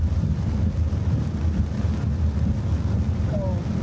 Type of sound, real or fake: real